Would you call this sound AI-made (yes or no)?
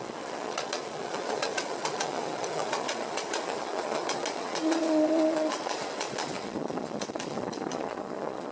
yes